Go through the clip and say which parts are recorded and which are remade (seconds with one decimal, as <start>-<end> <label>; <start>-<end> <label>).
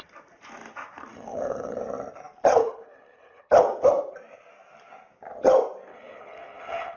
0.0-1.1 recorded; 1.1-1.8 remade; 1.8-2.6 recorded; 2.6-3.5 remade; 3.5-5.9 recorded; 5.9-7.0 remade